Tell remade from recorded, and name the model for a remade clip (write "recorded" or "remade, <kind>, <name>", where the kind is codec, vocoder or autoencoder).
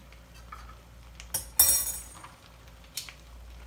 recorded